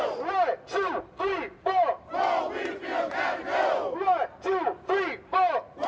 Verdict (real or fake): real